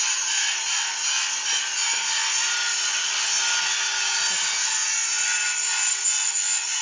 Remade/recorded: recorded